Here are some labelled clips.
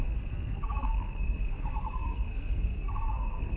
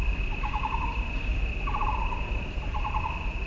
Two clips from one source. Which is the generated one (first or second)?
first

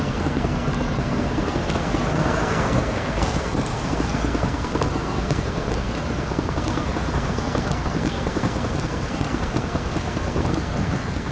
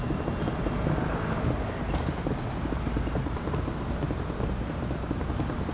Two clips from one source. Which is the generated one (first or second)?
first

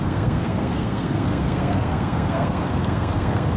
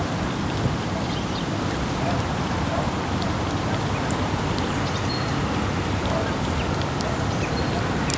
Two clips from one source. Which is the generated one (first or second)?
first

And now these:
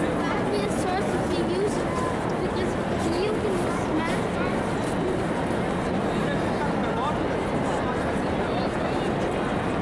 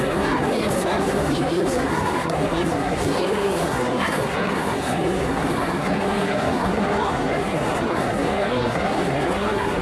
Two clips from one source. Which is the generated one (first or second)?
second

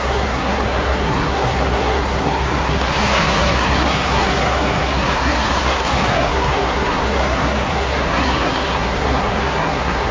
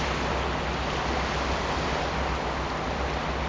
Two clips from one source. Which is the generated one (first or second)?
first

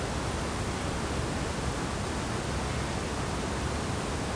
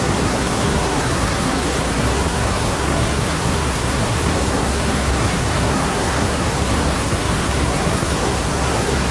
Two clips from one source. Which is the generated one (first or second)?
second